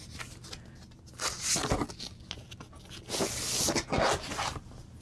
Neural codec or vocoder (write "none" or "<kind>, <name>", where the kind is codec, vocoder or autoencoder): none